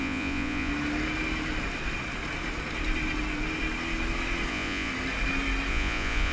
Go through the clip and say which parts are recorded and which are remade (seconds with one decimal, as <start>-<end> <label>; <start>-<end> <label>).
0.0-0.7 remade; 0.7-4.5 recorded; 4.5-4.9 remade; 4.9-5.7 recorded; 5.7-6.3 remade

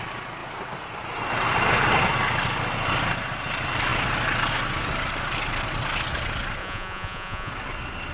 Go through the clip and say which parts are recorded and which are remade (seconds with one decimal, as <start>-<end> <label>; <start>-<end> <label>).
0.0-6.6 recorded; 6.6-7.5 remade; 7.5-8.1 recorded

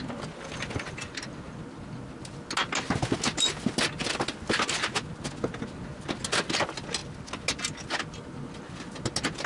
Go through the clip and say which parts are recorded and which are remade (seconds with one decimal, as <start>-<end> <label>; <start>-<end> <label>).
0.0-9.5 recorded

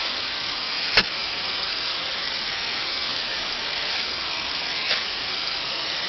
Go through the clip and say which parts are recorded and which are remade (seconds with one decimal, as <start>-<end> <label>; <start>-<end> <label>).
0.0-6.1 remade

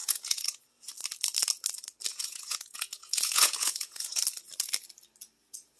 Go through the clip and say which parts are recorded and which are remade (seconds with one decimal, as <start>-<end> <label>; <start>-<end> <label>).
0.0-0.6 remade; 0.6-2.1 recorded; 2.1-4.2 remade; 4.2-5.8 recorded

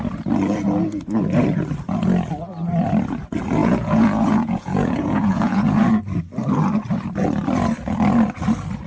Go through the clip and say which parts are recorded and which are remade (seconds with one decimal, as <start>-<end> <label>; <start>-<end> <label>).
0.0-3.6 recorded; 3.6-5.8 remade; 5.8-8.9 recorded